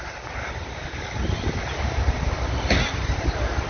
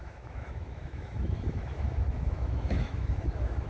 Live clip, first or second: first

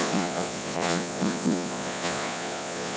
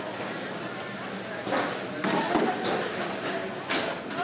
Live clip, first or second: second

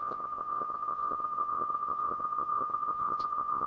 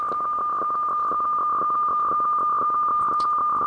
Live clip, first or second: second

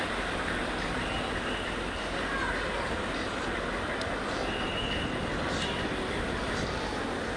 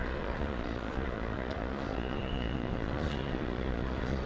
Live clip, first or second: first